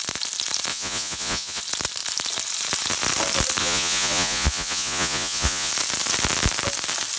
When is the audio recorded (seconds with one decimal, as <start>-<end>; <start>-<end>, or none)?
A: 0.0-0.7; 1.6-3.6; 5.7-7.2